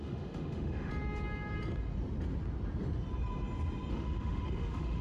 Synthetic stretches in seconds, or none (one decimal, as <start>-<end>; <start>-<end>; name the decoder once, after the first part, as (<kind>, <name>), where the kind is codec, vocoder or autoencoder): 0.0-0.9 (autoencoder, DAC-VAE); 3.9-5.0

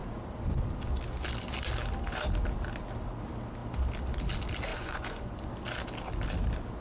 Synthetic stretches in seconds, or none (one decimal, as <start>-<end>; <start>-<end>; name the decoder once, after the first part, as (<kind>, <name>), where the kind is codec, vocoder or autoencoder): 4.7-5.5 (vocoder, Vocos)

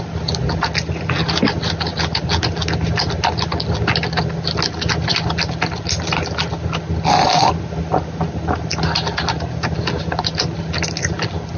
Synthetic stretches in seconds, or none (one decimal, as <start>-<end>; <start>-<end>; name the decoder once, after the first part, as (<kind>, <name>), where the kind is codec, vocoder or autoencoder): none

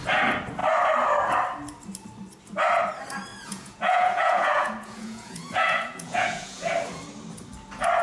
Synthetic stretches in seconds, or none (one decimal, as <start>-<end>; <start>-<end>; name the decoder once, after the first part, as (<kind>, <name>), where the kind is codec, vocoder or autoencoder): 3.3-6.7 (vocoder, Vocos)